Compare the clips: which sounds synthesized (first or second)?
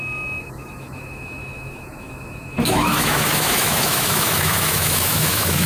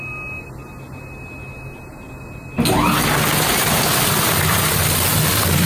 first